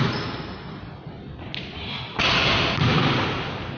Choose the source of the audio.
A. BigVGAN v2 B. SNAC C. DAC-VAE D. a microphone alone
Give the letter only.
D